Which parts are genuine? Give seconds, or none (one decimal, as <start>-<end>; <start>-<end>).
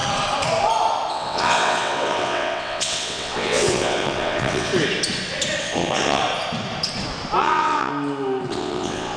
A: 0.0-1.1; 4.7-5.6; 6.2-7.4; 7.9-8.5